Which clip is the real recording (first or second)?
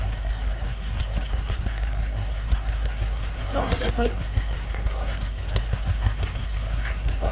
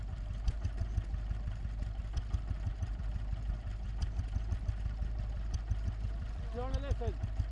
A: second